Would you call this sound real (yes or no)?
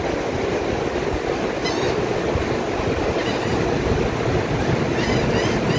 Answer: yes